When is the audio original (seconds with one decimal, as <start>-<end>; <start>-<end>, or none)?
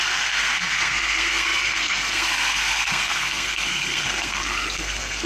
none